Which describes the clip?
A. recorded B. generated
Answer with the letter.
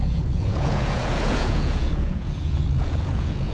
B